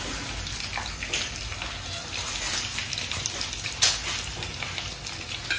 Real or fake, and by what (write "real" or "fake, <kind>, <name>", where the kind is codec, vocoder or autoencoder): real